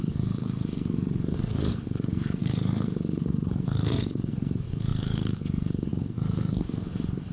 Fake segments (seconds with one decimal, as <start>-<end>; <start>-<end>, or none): 0.0-7.3